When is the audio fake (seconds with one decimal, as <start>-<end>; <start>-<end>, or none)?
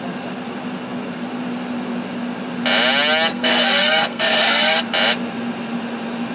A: 3.3-4.8